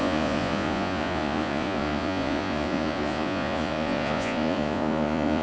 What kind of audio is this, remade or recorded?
remade